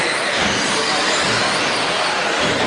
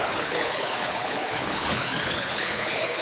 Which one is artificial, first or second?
second